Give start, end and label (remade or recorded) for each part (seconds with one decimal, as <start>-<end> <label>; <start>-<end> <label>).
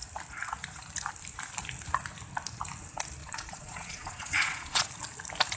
0.0-3.2 recorded; 3.2-4.9 remade; 4.9-5.6 recorded